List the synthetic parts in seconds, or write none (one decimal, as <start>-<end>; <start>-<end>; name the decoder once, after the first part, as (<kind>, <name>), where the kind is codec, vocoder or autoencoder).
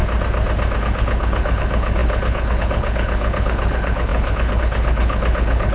0.8-5.7 (codec, HILCodec)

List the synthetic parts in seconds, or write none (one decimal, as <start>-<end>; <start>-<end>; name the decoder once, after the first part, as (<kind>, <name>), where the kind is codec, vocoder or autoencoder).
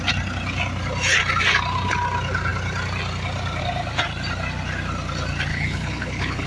5.5-6.5 (codec, HILCodec)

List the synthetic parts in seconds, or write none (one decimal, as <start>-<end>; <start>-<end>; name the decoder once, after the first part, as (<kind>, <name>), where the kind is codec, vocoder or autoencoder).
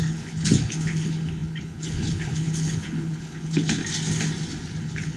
0.0-3.8 (codec, HILCodec); 4.8-5.2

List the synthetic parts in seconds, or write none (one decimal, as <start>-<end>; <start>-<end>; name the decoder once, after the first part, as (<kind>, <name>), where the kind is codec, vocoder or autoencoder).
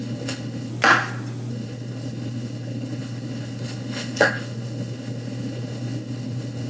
0.0-0.7 (codec, HILCodec); 1.5-6.7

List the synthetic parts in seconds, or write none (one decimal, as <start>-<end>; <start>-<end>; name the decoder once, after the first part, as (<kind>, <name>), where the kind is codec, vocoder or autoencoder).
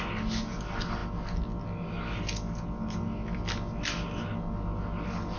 none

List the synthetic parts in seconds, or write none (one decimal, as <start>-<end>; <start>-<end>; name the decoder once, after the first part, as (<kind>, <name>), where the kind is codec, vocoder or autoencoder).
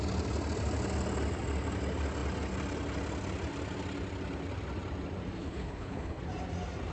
5.4-6.2 (codec, HILCodec)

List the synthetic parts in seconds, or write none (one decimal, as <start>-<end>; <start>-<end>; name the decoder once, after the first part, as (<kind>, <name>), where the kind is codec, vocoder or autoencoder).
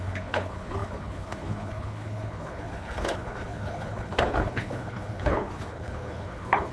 0.0-6.7 (codec, HILCodec)